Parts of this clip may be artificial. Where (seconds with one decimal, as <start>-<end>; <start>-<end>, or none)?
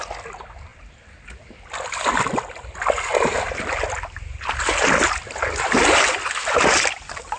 none